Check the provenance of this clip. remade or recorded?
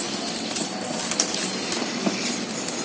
recorded